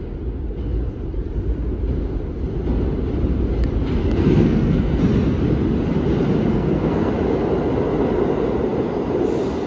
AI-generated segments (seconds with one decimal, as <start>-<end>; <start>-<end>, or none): 4.0-5.0; 6.5-7.1